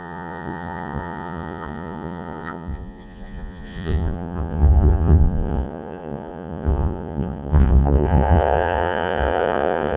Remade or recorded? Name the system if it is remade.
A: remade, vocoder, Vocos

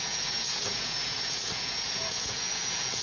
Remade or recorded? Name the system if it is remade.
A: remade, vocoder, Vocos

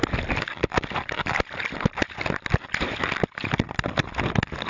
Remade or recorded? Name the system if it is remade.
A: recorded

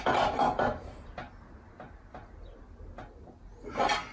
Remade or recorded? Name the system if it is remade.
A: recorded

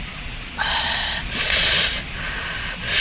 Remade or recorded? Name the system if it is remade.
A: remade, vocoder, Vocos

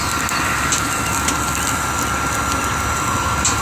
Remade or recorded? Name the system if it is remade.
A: recorded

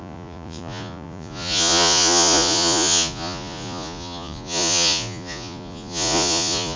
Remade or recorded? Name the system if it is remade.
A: remade, vocoder, Vocos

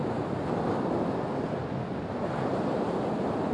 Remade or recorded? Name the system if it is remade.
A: recorded